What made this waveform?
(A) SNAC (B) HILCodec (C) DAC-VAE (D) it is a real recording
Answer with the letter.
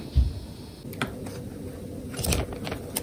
D